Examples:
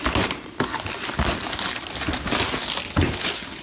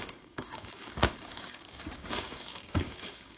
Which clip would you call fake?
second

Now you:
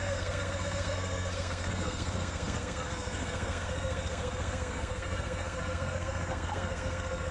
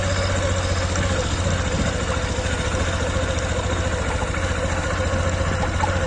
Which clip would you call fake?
first